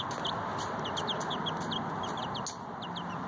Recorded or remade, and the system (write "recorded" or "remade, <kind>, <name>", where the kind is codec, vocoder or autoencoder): recorded